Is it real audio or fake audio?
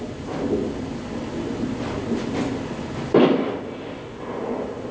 real